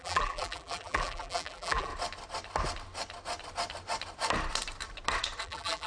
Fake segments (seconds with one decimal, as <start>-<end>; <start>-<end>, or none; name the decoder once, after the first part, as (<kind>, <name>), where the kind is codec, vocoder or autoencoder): 0.0-1.9 (vocoder, BigVGAN v2); 5.4-5.9